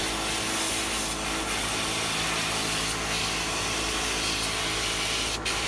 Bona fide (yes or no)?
yes